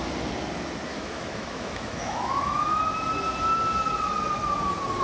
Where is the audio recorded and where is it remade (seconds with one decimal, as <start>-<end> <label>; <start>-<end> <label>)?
0.0-0.9 recorded; 0.9-2.8 remade; 2.8-5.0 recorded